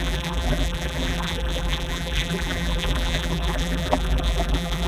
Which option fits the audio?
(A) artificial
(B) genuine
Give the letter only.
A